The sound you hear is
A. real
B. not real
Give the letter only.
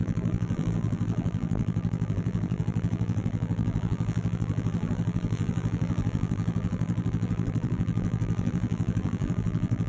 B